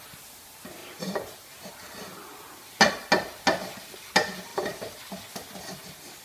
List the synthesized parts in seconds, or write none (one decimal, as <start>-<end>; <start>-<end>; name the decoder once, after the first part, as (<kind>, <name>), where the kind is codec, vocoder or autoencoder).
0.8-1.7 (vocoder, BigVGAN v2); 4.5-5.0